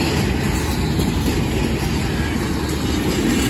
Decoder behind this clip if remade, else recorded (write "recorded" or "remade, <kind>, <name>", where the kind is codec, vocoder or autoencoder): recorded